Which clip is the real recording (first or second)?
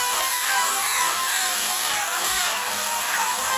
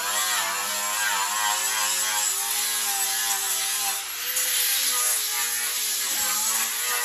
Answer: second